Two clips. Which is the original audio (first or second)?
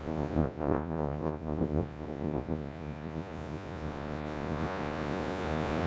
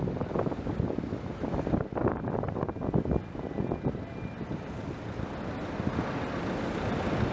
second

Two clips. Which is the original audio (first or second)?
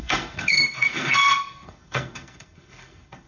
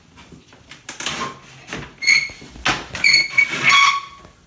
second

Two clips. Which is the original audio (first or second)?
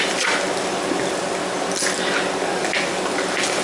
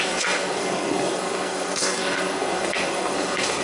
first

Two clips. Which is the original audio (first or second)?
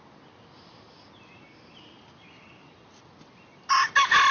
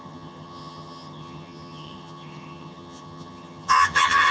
first